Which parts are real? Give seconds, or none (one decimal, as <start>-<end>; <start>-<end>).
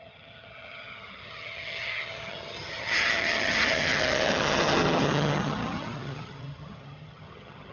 none